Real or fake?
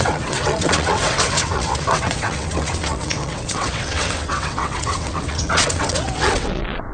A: fake